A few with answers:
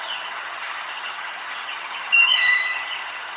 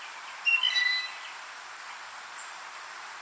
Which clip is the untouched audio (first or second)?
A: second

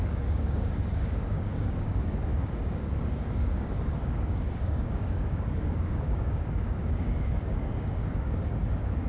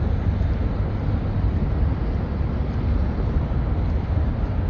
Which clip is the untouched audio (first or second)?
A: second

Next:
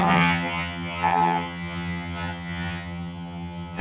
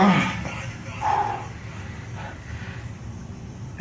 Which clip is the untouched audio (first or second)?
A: second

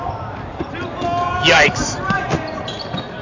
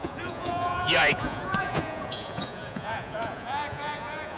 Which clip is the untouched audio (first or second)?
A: first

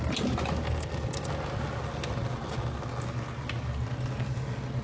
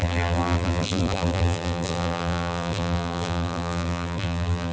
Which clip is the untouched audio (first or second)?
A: first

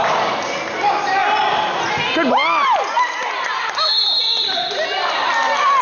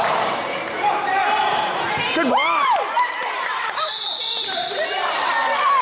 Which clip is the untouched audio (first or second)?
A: first